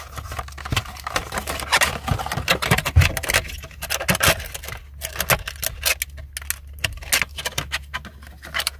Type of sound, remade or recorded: recorded